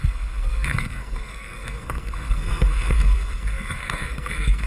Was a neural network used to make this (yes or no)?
yes